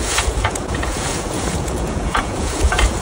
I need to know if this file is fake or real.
fake